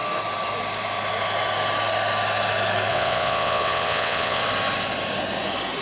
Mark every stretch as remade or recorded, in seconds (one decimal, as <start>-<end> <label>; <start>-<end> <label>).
0.0-2.9 recorded; 2.9-4.4 remade; 4.4-5.8 recorded